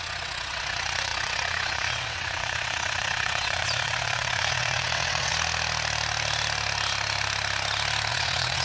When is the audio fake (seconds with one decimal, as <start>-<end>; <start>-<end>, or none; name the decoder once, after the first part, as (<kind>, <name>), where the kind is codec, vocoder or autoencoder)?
0.0-5.3 (vocoder, WaveNeXt); 8.1-8.6